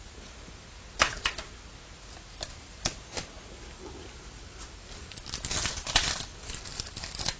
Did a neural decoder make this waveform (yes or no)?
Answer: no